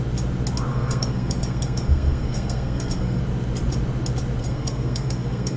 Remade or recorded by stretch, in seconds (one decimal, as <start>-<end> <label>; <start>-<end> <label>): 0.0-0.7 recorded; 0.7-3.2 remade; 3.2-4.4 recorded; 4.4-5.6 remade